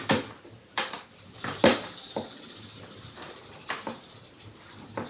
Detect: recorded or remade remade